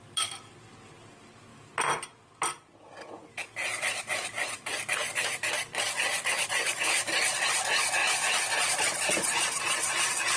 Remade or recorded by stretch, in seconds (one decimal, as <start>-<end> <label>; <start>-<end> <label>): 0.0-10.4 recorded